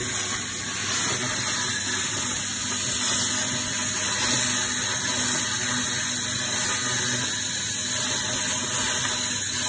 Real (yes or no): yes